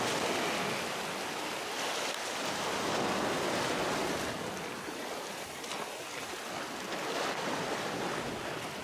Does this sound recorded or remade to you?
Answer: recorded